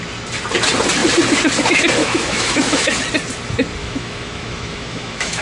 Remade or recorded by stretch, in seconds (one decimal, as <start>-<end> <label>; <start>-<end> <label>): 0.0-2.0 recorded; 2.0-2.9 remade; 2.9-3.8 recorded; 3.8-5.4 remade